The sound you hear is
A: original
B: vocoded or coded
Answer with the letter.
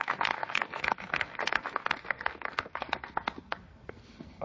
B